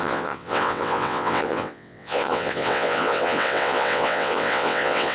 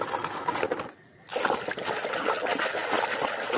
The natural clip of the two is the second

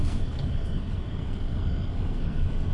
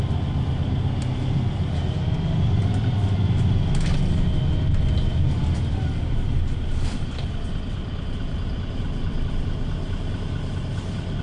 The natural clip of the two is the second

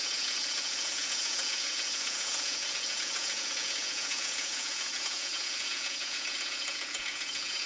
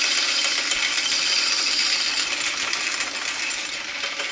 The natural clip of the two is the second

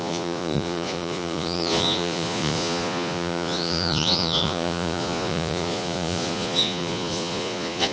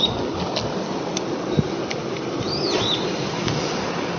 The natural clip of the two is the second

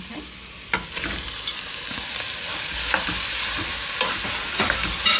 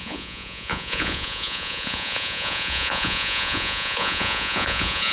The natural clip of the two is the first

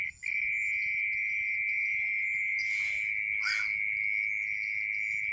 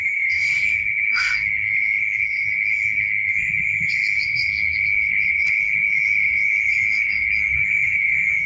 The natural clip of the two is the first